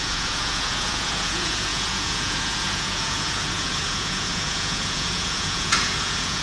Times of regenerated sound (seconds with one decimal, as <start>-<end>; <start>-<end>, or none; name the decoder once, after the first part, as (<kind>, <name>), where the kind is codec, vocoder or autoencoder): 0.0-6.4 (vocoder, Vocos)